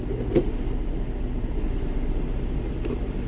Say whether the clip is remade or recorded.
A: recorded